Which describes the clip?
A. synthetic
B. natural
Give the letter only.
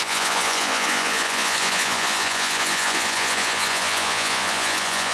A